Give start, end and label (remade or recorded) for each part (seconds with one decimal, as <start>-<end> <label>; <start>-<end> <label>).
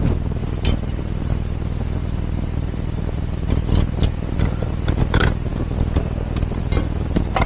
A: 0.0-0.4 recorded; 0.4-1.0 remade; 1.0-2.0 recorded; 2.0-5.0 remade; 5.0-7.5 recorded